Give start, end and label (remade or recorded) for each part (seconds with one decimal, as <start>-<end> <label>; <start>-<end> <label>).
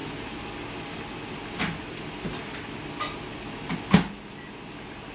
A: 0.0-5.1 recorded